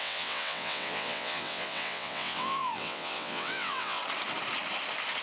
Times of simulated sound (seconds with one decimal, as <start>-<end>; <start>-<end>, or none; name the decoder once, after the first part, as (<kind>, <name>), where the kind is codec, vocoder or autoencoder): 0.0-4.0 (vocoder, WaveNeXt)